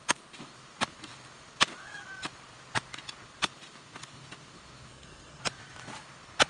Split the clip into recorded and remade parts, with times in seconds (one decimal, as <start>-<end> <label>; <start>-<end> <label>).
0.0-4.9 recorded; 4.9-5.4 remade; 5.4-6.5 recorded